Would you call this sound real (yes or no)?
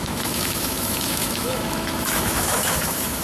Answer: no